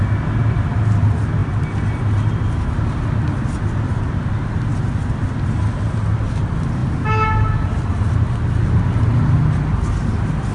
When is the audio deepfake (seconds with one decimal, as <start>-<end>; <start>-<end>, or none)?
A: none